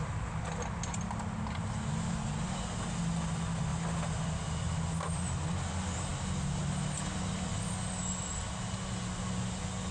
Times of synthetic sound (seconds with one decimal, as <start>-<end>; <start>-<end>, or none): none